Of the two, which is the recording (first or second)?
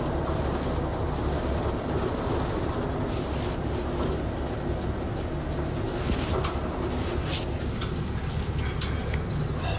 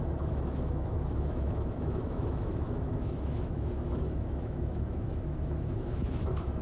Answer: first